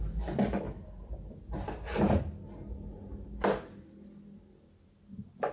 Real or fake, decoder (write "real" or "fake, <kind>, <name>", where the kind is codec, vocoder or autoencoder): real